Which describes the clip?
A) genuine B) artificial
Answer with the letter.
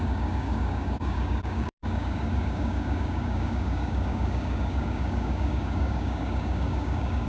B